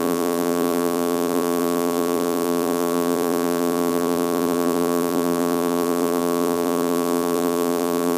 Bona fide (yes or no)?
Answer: no